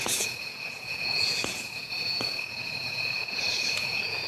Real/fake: fake